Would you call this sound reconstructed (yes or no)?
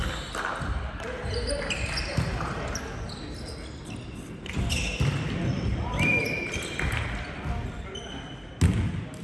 no